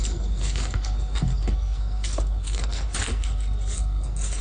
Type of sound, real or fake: fake